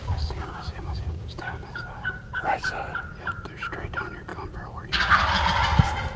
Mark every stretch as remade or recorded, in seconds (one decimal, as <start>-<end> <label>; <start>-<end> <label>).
0.0-2.4 remade; 2.4-6.2 recorded